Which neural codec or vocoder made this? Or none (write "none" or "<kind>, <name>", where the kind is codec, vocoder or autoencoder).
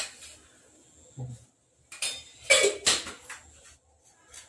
none